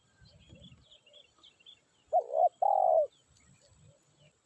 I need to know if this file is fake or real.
real